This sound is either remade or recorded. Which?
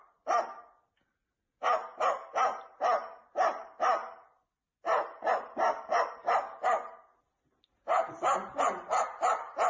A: recorded